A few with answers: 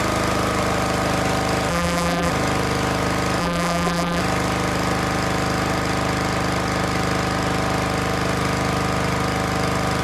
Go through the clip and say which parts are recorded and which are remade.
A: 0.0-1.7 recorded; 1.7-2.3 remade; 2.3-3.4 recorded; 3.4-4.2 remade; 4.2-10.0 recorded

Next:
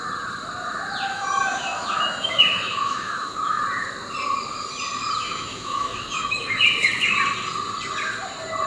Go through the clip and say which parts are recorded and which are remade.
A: 0.0-1.1 recorded; 1.1-3.6 remade; 3.6-5.2 recorded; 5.2-6.6 remade; 6.6-8.7 recorded

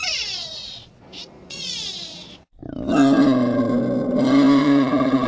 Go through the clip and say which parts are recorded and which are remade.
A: 0.0-2.6 remade; 2.6-4.6 recorded; 4.6-5.3 remade

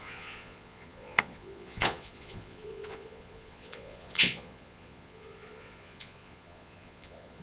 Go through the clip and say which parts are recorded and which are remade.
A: 0.0-7.4 remade